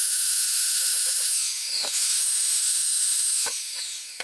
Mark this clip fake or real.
fake